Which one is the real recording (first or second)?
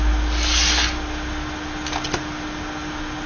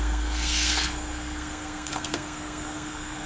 first